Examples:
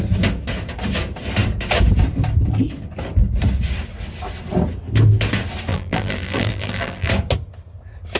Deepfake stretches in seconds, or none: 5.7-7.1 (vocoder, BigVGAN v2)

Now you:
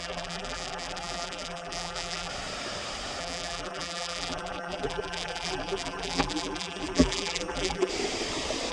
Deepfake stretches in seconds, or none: 0.0-2.3 (vocoder, BigVGAN v2); 3.2-7.9

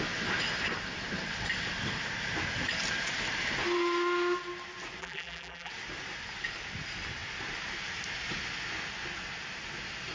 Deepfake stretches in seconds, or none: 5.0-5.7 (vocoder, BigVGAN v2)

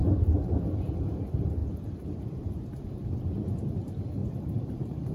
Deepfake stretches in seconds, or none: 4.2-5.1 (vocoder, BigVGAN v2)

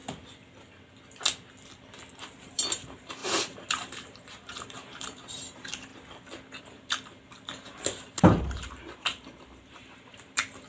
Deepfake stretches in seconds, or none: 2.2-5.9 (vocoder, BigVGAN v2); 6.6-10.7

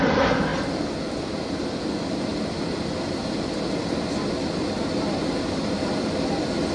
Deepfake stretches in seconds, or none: none